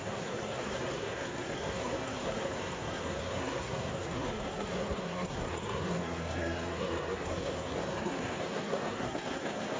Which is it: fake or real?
fake